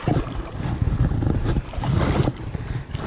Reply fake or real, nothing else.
real